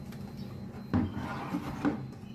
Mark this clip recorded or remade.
recorded